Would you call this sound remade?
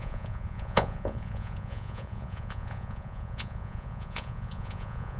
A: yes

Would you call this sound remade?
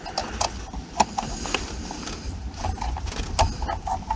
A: no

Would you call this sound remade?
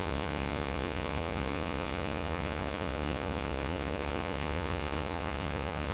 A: yes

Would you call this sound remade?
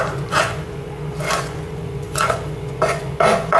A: yes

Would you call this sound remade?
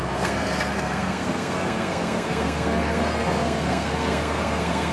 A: yes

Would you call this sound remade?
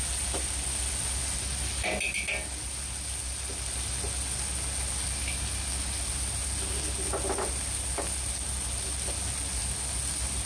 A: no